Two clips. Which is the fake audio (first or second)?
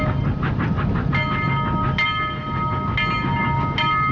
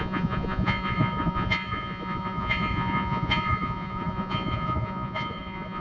second